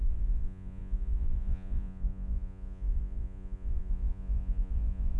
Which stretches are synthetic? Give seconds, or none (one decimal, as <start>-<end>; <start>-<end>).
0.0-5.2